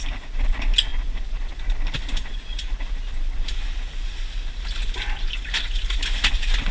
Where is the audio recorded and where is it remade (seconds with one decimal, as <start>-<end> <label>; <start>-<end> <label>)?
0.0-6.7 recorded